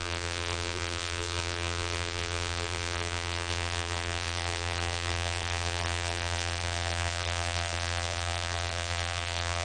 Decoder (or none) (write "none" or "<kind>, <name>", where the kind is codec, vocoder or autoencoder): vocoder, BigVGAN v2